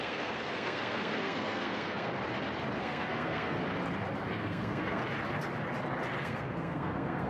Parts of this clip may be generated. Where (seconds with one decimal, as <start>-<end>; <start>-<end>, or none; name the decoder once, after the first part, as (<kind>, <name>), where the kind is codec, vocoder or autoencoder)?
0.0-2.1 (codec, SNAC); 2.8-3.6; 4.3-5.0; 6.2-7.3